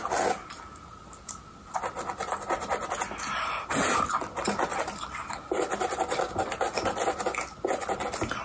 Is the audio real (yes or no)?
yes